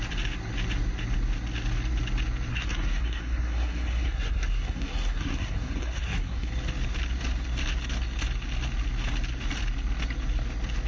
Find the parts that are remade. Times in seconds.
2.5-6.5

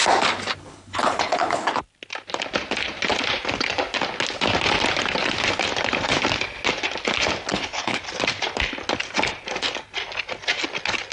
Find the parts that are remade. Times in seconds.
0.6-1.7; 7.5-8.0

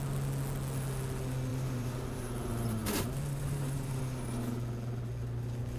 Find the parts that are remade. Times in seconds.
1.5-4.0

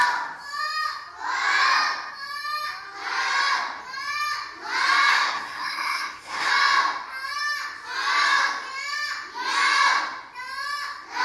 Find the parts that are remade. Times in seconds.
5.1-6.5